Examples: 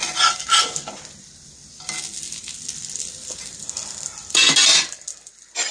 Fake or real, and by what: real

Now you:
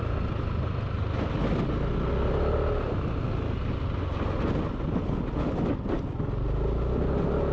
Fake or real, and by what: real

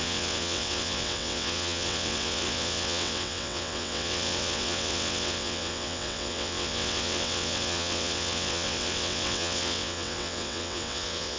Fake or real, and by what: fake, vocoder, WaveNeXt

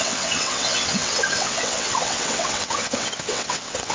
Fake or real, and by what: fake, vocoder, WaveNeXt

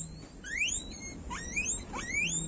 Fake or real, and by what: real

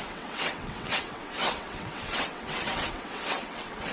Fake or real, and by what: fake, vocoder, WaveNeXt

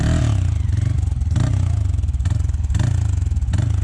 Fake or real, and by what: real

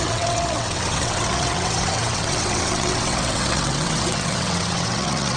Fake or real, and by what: fake, vocoder, WaveNeXt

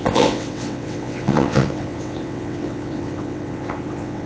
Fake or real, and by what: fake, vocoder, WaveNeXt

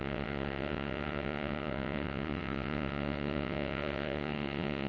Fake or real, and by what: fake, vocoder, WaveNeXt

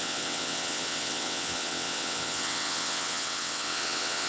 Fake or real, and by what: fake, vocoder, WaveNeXt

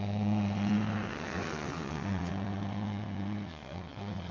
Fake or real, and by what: fake, vocoder, WaveNeXt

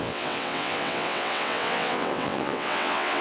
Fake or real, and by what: fake, vocoder, WaveNeXt